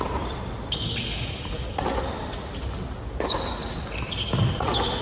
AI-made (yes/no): no